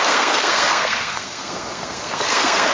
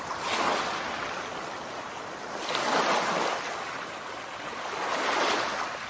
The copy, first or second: first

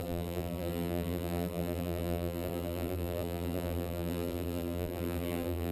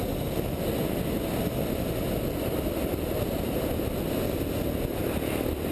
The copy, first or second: first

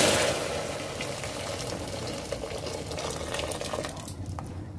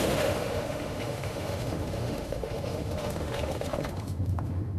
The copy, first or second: second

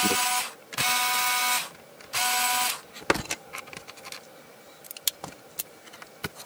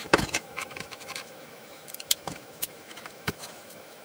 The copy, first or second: second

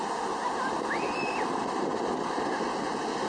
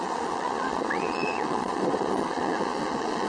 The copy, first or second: second